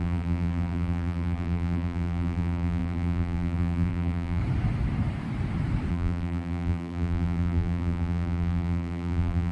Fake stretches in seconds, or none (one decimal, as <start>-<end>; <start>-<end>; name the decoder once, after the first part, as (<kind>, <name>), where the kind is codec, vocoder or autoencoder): 0.0-4.4 (vocoder, BigVGAN v2); 5.9-9.5